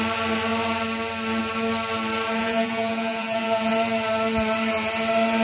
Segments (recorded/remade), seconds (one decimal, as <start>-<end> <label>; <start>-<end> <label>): 0.0-2.4 recorded; 2.4-3.7 remade; 3.7-5.4 recorded